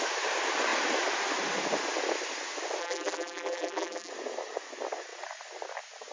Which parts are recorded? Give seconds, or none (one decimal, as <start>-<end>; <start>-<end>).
0.0-2.8; 4.1-6.1